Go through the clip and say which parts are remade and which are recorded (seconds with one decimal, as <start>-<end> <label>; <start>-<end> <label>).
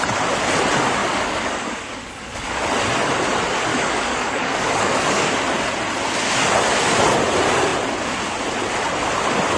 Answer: 0.0-1.0 recorded; 1.0-2.6 remade; 2.6-3.7 recorded; 3.7-5.3 remade; 5.3-9.6 recorded